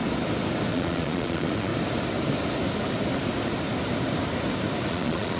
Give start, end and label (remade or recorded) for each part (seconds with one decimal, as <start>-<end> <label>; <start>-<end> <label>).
0.0-0.7 recorded; 0.7-1.7 remade; 1.7-4.9 recorded; 4.9-5.4 remade